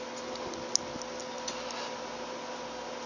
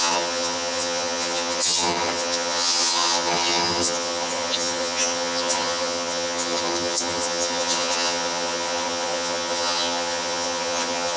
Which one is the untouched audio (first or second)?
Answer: first